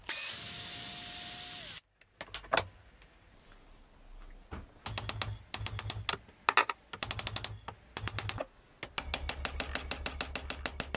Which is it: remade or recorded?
recorded